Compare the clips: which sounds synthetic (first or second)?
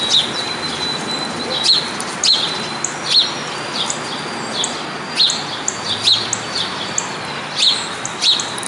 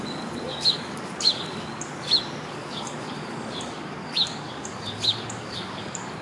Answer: second